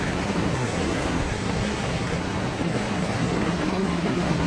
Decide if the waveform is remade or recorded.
remade